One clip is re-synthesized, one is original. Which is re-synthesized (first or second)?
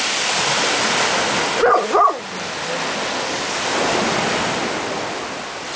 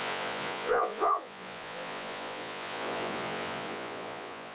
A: second